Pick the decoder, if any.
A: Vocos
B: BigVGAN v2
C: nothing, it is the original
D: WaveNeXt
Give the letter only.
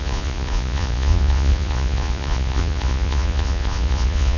A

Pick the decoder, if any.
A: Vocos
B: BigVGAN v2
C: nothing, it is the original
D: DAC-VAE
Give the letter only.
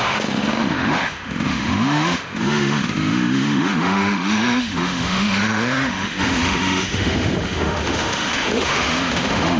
D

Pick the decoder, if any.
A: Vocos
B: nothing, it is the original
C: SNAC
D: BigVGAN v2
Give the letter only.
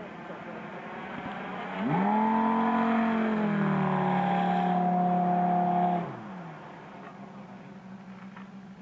B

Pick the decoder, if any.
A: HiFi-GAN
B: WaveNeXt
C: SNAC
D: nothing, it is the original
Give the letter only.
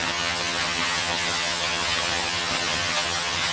A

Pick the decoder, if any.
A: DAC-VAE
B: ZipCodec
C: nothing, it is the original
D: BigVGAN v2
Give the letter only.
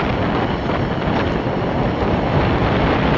C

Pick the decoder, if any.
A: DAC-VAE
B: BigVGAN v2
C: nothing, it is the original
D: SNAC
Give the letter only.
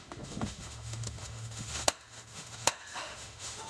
A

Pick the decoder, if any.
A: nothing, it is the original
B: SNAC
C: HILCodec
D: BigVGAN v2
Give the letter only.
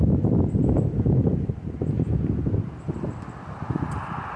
A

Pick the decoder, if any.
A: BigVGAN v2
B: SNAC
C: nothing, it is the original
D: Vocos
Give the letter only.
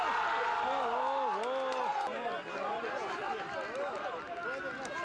C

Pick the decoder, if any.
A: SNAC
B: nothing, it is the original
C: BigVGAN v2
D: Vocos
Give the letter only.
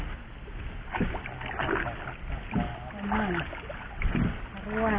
B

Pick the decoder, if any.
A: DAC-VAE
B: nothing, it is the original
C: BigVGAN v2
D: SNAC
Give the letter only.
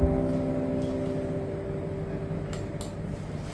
B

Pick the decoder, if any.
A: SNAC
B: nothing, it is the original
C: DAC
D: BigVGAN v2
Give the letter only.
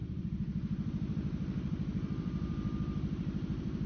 D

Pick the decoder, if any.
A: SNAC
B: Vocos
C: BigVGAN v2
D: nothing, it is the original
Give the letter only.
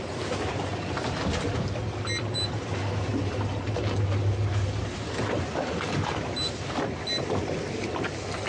D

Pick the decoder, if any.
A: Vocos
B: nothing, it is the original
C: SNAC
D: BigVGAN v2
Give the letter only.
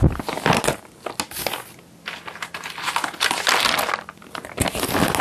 B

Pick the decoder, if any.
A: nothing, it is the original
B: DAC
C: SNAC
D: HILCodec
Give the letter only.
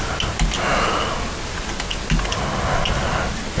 A